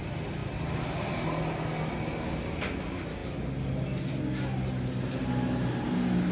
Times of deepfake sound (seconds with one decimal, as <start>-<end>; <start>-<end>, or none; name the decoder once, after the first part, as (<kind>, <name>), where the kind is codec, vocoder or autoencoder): none